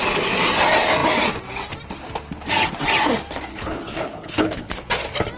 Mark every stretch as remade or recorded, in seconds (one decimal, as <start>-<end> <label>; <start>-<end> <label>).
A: 0.0-3.5 recorded; 3.5-4.7 remade; 4.7-5.4 recorded